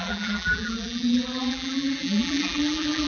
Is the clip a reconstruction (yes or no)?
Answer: yes